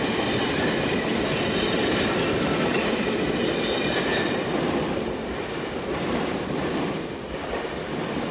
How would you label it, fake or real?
real